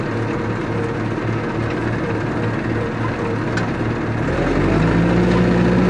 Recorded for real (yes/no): yes